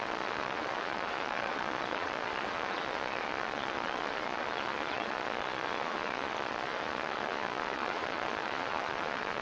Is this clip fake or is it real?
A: fake